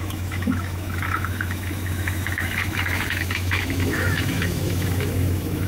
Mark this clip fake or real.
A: fake